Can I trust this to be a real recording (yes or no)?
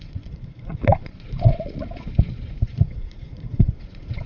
no